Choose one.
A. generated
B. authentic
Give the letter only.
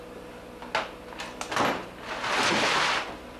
B